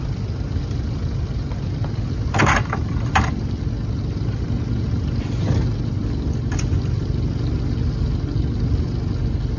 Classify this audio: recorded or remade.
recorded